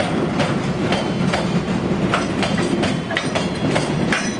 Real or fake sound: real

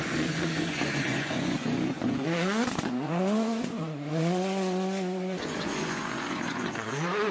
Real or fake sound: fake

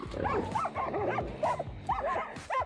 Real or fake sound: real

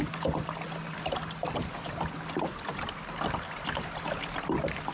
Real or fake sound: real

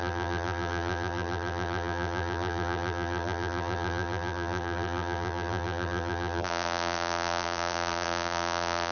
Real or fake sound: fake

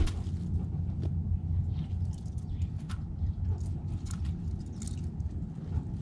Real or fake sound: real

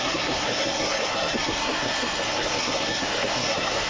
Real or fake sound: fake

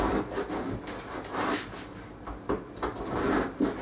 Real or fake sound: real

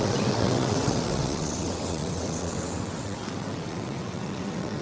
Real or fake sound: fake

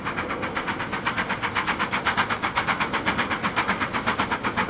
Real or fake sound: real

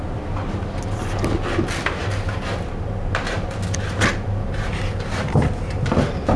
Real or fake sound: real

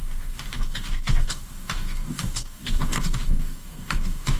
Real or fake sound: fake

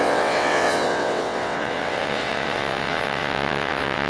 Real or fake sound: fake